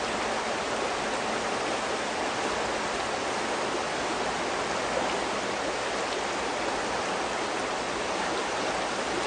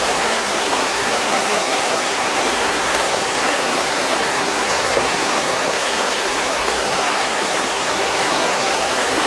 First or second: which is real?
first